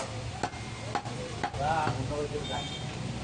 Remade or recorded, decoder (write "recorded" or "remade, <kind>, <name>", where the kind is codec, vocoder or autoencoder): recorded